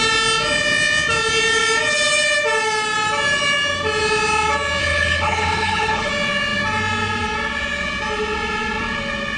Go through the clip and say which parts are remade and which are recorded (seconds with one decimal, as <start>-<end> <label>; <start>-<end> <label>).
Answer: 0.0-4.8 recorded; 4.8-6.1 remade; 6.1-9.4 recorded